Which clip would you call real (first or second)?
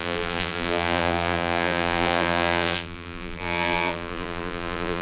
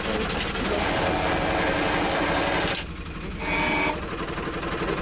second